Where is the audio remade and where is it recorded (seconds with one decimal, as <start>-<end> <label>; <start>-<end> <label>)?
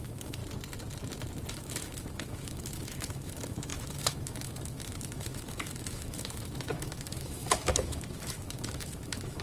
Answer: 0.0-0.4 remade; 0.4-1.5 recorded; 1.5-9.4 remade